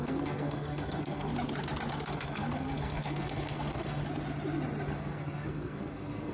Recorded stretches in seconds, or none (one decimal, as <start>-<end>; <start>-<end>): 1.3-1.9; 4.0-4.9